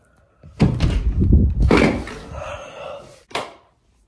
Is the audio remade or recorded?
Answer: recorded